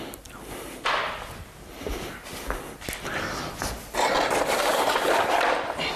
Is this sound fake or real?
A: real